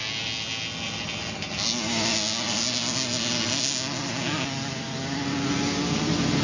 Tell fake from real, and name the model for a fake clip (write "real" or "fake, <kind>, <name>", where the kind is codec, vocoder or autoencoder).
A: real